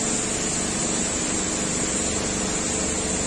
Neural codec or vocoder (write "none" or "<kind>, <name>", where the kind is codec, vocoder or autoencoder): none